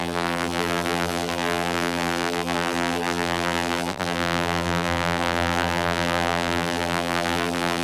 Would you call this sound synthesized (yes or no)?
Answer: yes